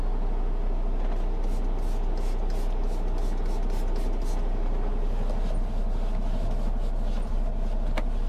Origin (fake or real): real